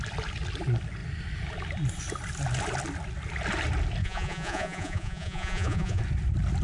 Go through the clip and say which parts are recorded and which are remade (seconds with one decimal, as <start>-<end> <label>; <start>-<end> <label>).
0.0-4.0 recorded; 4.0-6.0 remade; 6.0-6.6 recorded